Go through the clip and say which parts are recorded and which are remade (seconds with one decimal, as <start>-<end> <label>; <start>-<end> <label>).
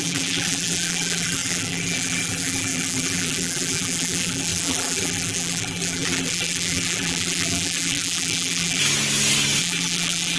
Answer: 0.0-8.8 remade; 8.8-9.6 recorded; 9.6-10.4 remade